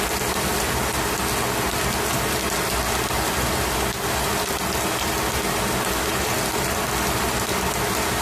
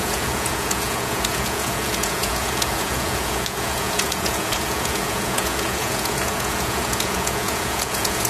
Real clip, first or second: first